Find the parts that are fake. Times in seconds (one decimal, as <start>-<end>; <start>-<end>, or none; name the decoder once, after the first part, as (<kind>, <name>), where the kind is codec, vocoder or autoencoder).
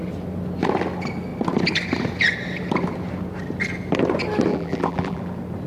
4.5-5.2 (vocoder, BigVGAN v2)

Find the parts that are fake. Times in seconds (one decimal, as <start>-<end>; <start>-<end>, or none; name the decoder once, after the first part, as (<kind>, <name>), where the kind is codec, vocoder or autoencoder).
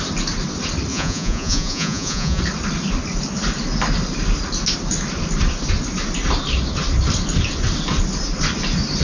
0.9-2.4 (vocoder, Vocos)